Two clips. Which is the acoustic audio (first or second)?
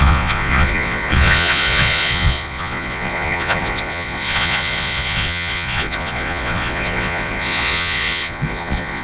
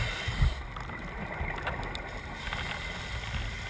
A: second